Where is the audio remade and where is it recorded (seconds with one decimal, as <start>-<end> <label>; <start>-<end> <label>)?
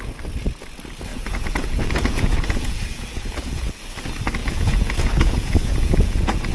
0.0-1.1 recorded; 1.1-3.7 remade; 3.7-4.4 recorded; 4.4-6.5 remade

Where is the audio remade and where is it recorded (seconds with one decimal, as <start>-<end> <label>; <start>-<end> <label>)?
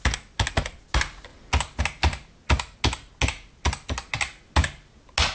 0.0-5.3 recorded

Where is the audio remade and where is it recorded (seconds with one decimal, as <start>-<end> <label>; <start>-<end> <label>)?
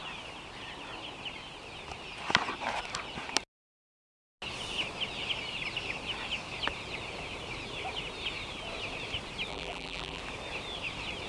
0.0-9.5 recorded; 9.5-10.2 remade; 10.2-11.3 recorded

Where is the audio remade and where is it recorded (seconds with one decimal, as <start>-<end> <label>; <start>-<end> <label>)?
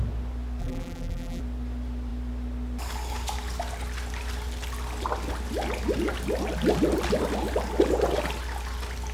0.0-0.6 recorded; 0.6-1.4 remade; 1.4-9.1 recorded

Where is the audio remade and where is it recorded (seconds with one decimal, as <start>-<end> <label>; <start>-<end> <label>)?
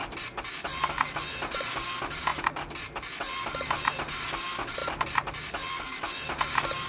0.0-0.8 remade; 0.8-6.9 recorded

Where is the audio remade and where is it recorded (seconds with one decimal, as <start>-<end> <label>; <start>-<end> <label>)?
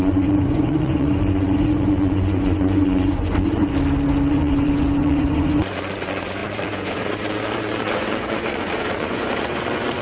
0.0-3.6 remade; 3.6-4.3 recorded; 4.3-10.0 remade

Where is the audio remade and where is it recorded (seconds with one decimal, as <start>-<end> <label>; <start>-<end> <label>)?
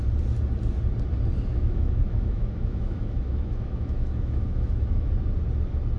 0.0-1.5 recorded; 1.5-5.1 remade; 5.1-6.0 recorded